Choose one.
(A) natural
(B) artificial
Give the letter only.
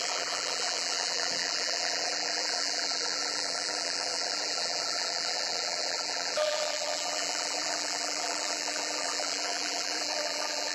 B